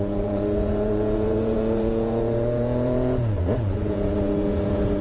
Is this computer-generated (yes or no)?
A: yes